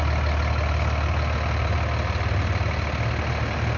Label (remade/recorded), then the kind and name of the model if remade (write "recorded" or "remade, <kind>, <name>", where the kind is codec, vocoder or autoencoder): recorded